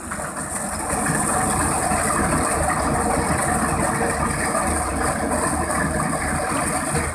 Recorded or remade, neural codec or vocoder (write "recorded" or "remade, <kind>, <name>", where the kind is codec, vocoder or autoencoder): recorded